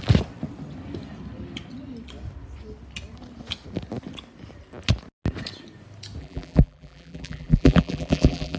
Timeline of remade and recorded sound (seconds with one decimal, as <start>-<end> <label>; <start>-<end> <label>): 0.0-6.2 recorded; 6.2-8.6 remade

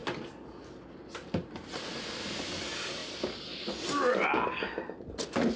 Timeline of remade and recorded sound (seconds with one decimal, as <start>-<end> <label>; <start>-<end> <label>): 0.0-5.6 recorded

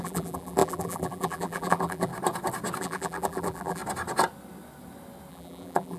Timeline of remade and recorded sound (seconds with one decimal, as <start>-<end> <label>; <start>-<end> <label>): 0.0-2.1 remade; 2.1-2.8 recorded; 2.8-3.8 remade; 3.8-5.3 recorded; 5.3-6.0 remade